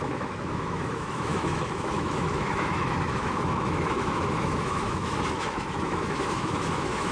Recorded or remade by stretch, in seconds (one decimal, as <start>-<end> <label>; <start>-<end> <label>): 0.0-7.1 remade